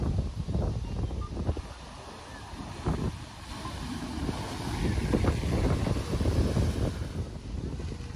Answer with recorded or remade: recorded